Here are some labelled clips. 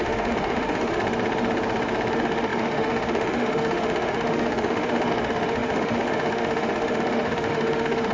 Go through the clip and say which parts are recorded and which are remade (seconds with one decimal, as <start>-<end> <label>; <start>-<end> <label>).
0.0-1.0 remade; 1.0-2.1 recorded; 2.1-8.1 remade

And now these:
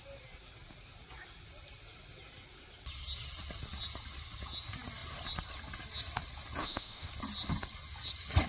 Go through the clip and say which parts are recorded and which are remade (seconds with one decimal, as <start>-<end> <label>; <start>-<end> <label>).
0.0-6.6 recorded; 6.6-7.1 remade; 7.1-8.5 recorded

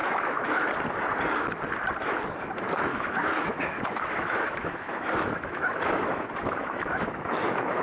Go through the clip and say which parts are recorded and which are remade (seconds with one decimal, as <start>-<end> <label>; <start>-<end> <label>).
0.0-0.6 remade; 0.6-2.9 recorded; 2.9-7.8 remade

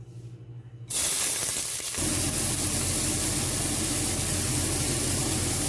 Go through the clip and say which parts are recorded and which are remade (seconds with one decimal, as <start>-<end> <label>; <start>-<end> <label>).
0.0-5.7 recorded

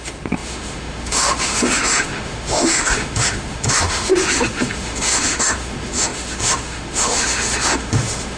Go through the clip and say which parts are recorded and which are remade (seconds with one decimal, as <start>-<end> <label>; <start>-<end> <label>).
0.0-8.4 remade

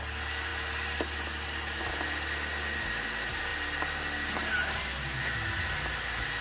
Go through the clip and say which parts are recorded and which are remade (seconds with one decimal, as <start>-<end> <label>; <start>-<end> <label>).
0.0-6.4 recorded

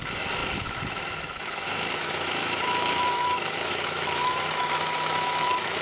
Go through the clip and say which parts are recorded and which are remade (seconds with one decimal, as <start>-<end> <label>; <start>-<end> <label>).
0.0-5.8 remade

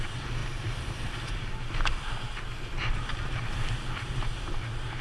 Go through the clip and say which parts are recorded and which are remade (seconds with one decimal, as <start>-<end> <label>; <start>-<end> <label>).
0.0-5.0 recorded